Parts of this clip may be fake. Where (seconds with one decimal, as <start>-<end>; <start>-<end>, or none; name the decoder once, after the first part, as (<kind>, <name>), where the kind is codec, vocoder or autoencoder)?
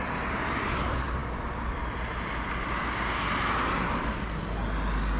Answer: none